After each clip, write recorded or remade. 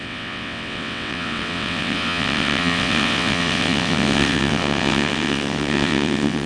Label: remade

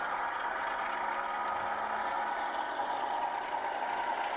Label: recorded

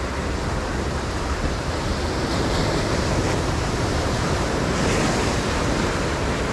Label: remade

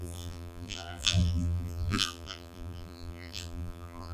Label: remade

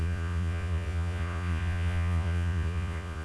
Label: remade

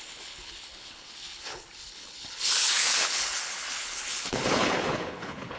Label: remade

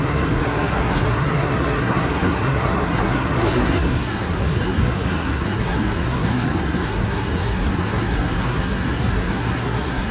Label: remade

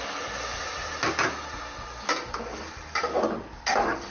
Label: recorded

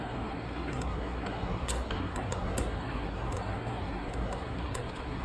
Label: remade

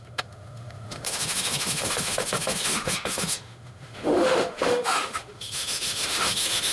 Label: remade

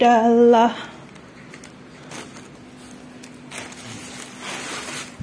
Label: recorded